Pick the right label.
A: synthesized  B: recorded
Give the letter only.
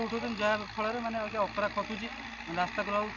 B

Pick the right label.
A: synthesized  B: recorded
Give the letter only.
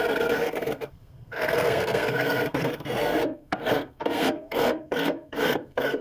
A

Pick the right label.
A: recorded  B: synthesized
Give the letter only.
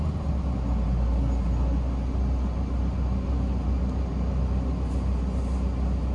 A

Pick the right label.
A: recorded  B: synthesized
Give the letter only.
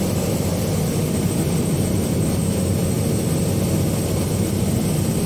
A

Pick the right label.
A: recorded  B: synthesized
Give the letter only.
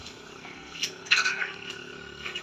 B